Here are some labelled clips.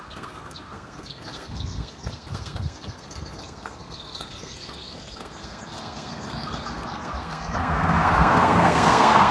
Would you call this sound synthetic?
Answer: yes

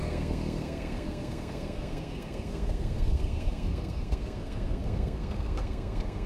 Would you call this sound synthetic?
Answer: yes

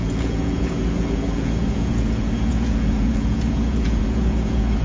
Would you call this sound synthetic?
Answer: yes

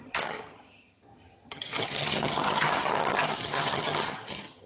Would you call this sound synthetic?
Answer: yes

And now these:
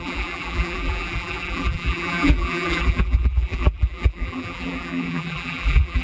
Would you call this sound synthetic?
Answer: yes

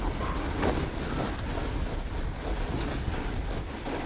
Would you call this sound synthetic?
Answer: no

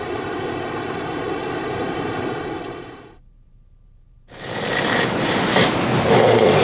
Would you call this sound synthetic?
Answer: yes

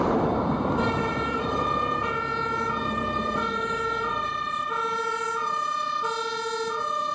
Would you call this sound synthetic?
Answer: yes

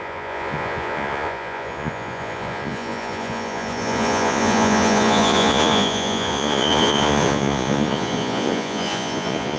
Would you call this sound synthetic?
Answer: yes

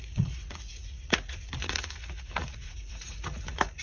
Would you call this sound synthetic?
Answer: yes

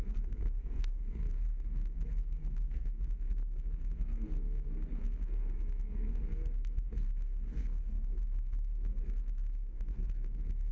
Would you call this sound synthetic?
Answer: yes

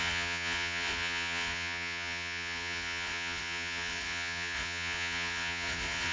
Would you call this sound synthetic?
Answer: yes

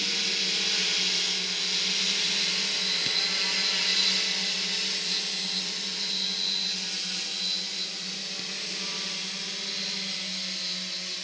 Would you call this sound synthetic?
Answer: no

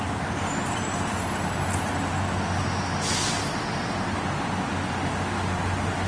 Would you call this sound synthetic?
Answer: no